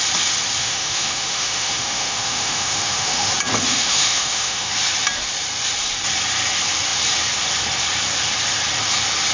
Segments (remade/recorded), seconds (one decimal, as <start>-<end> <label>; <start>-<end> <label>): 0.0-0.6 recorded; 0.6-3.3 remade; 3.3-3.7 recorded; 3.7-4.7 remade; 4.7-9.3 recorded